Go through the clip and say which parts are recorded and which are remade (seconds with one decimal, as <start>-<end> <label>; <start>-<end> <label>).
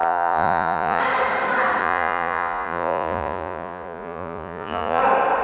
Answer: 0.0-1.0 remade; 1.0-1.8 recorded; 1.8-5.0 remade; 5.0-5.4 recorded